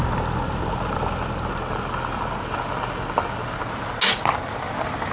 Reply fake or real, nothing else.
real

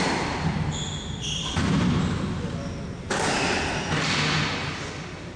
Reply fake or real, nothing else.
real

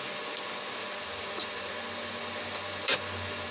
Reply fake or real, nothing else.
real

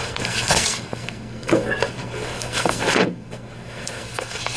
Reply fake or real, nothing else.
fake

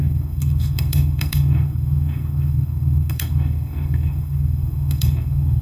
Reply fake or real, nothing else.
fake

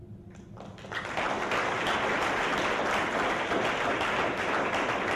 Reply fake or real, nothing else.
real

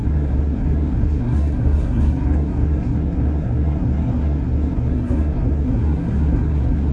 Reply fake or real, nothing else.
fake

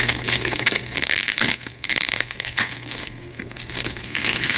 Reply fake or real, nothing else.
fake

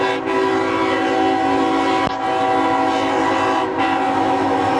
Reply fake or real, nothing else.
real